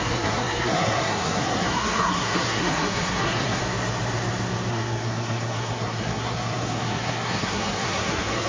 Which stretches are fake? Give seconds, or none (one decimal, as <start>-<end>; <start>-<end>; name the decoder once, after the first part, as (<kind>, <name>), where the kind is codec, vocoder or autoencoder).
0.0-3.6 (codec, SNAC); 4.7-8.5